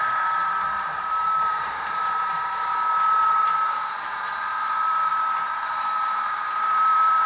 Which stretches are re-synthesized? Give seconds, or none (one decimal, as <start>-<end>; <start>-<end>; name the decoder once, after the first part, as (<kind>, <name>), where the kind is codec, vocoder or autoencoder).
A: 0.0-2.7 (vocoder, BigVGAN v2); 3.4-5.1; 5.6-7.3